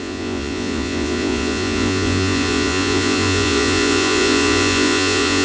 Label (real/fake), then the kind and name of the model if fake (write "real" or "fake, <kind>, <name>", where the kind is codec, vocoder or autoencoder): fake, vocoder, Vocos